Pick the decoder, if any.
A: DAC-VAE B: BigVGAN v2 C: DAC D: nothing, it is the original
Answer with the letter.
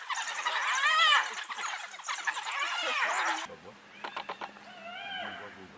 D